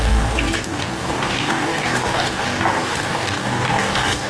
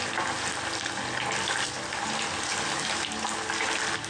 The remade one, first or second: first